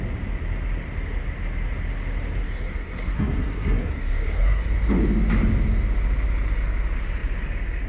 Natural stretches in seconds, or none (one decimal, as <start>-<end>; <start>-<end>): 0.0-2.4; 4.7-7.9